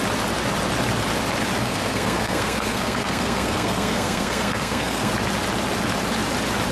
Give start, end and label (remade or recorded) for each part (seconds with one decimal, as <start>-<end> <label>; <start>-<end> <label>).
0.0-1.6 recorded; 1.6-5.1 remade; 5.1-6.7 recorded